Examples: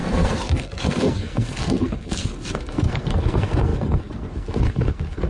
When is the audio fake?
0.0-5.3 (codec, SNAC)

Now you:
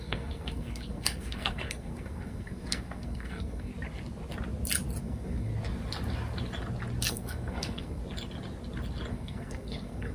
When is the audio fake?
0.0-3.7 (codec, SNAC); 5.0-5.5; 7.1-8.0; 9.1-10.1

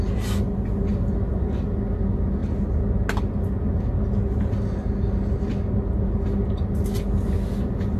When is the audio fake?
none

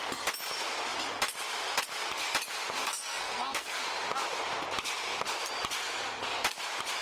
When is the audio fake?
2.8-3.8 (codec, SNAC)

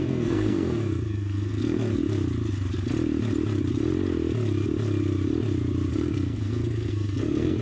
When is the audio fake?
0.0-2.0 (codec, SNAC); 5.9-7.6